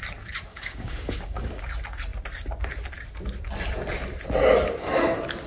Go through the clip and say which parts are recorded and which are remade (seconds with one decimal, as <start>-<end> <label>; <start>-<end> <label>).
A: 0.0-0.5 recorded; 0.5-1.6 remade; 1.6-5.5 recorded